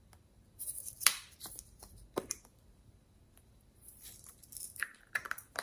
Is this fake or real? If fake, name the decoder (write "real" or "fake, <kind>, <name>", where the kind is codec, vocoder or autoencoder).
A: fake, vocoder, BigVGAN v2